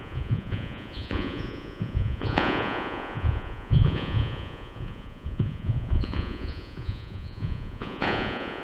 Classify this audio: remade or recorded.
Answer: remade